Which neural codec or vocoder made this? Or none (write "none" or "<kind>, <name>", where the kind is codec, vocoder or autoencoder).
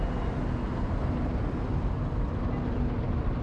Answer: none